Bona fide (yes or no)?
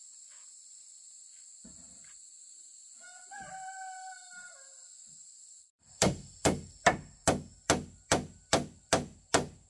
yes